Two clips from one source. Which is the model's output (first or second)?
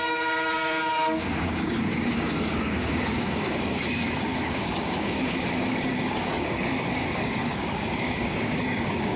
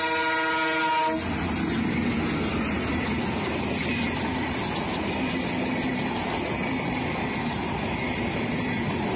first